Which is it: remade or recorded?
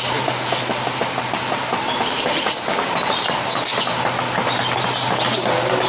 recorded